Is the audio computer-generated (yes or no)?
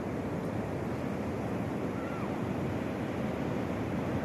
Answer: no